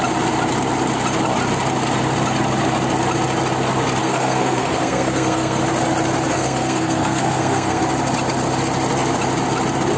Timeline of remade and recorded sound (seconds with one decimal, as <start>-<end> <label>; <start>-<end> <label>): 0.0-4.0 recorded; 4.0-5.6 remade; 5.6-6.3 recorded; 6.3-7.8 remade; 7.8-10.0 recorded